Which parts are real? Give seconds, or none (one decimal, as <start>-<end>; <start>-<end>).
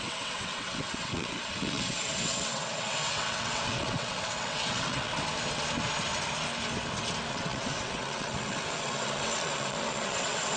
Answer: 5.1-7.3